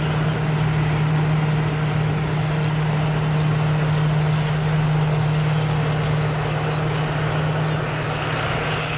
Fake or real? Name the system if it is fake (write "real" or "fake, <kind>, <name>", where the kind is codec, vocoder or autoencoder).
real